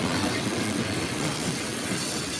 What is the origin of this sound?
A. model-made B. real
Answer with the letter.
A